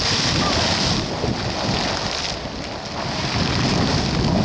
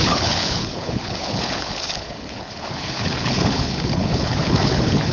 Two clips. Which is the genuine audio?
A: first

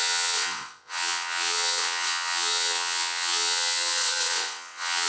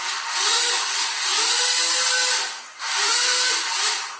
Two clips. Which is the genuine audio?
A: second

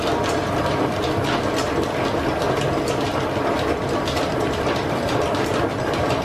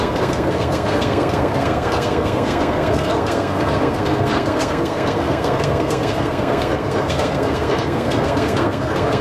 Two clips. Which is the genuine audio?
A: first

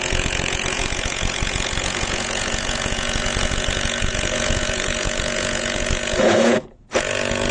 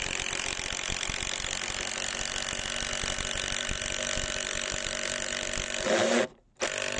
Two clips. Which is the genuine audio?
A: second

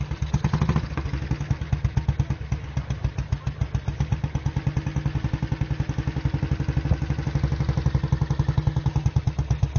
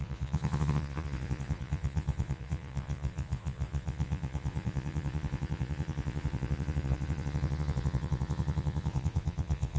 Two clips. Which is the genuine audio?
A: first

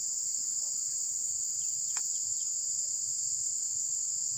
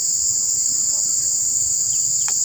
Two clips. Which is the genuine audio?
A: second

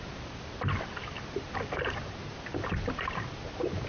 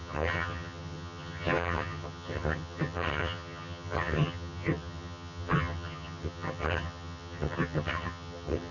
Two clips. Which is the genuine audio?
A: first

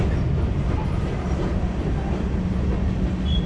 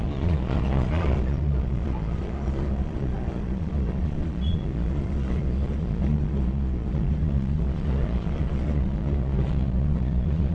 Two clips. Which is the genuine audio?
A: first